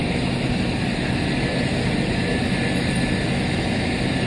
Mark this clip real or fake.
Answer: real